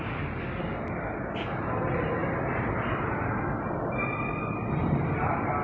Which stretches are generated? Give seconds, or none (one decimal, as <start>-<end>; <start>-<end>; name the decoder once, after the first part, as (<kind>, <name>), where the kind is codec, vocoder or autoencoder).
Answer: none